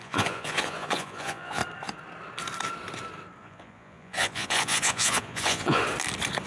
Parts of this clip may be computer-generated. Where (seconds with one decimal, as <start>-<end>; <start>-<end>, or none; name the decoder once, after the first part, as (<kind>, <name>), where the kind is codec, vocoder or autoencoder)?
0.0-1.6 (vocoder, Vocos); 3.4-5.8